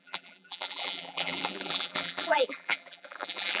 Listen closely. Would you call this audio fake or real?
fake